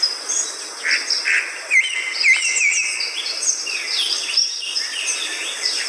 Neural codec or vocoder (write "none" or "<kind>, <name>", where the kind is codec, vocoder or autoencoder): none